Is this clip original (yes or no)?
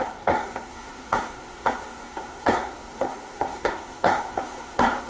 no